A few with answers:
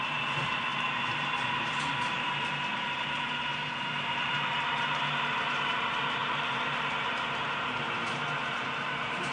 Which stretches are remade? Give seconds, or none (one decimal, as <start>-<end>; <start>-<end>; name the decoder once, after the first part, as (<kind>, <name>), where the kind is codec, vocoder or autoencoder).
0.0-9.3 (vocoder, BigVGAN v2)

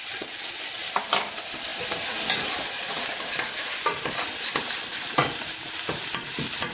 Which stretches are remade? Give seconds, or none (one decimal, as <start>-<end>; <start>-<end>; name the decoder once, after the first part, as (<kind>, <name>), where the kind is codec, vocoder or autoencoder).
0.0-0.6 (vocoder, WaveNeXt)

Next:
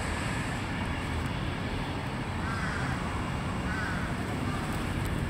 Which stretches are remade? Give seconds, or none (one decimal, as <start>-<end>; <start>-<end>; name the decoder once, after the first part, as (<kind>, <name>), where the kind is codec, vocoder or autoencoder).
0.0-2.0 (vocoder, BigVGAN v2); 4.2-5.3

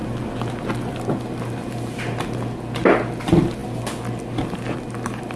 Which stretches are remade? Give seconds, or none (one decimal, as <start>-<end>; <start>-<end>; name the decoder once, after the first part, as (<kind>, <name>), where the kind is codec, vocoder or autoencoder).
none